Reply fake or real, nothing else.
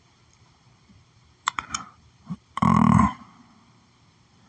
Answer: fake